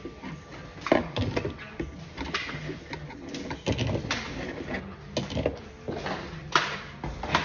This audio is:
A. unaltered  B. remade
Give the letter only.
A